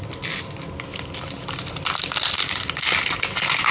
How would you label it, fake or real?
real